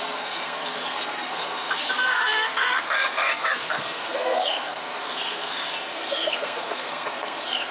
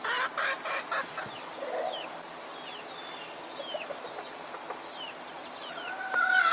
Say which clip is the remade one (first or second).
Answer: first